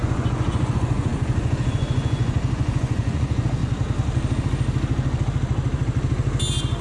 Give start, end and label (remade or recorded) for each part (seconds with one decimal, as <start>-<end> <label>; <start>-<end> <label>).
0.0-3.6 remade; 3.6-6.8 recorded